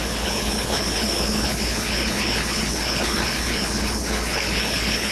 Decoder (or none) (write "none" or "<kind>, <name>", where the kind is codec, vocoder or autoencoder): codec, HILCodec